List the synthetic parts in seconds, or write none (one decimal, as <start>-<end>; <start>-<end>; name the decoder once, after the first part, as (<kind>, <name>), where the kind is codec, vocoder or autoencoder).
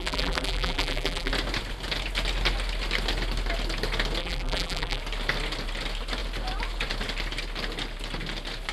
0.0-1.3 (vocoder, BigVGAN v2); 4.2-5.0